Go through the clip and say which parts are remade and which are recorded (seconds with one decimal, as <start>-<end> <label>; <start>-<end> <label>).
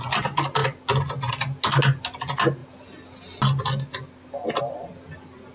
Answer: 0.0-5.5 recorded